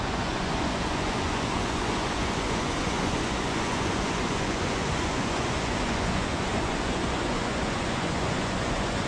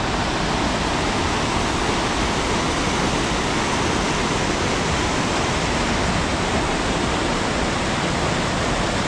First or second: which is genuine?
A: second